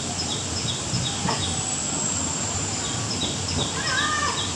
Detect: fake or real real